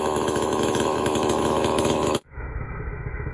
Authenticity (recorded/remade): remade